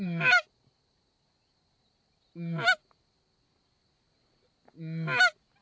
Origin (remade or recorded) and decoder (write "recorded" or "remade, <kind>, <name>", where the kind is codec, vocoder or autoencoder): recorded